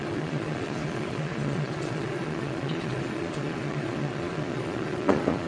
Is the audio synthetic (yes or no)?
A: yes